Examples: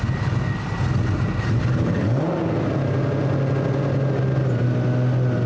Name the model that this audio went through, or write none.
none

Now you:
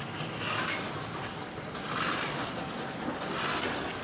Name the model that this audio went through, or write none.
none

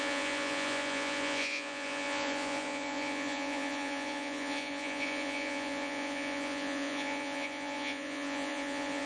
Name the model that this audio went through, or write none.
vocoder, Vocos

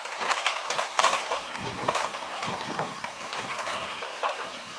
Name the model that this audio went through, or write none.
codec, SNAC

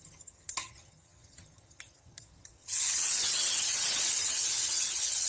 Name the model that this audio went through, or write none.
vocoder, HiFi-GAN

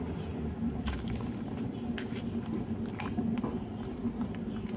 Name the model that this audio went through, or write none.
none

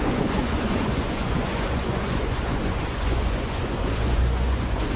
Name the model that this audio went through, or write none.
vocoder, Vocos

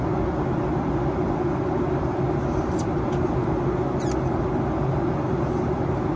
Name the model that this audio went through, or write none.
none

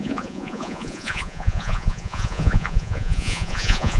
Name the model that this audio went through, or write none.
vocoder, Vocos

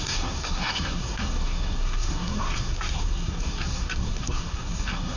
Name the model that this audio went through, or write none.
codec, SNAC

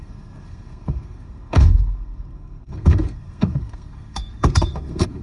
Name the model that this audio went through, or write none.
codec, SNAC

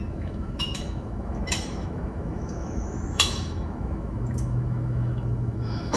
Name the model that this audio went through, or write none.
autoencoder, DAC-VAE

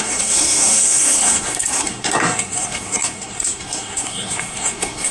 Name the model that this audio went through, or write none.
codec, SNAC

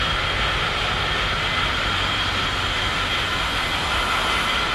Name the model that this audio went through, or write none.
none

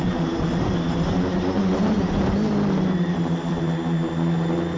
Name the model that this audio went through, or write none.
vocoder, BigVGAN v2